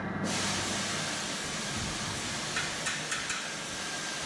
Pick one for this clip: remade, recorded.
recorded